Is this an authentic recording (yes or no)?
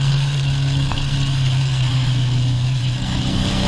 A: no